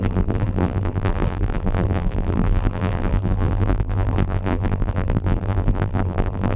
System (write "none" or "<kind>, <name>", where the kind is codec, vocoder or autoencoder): vocoder, BigVGAN v2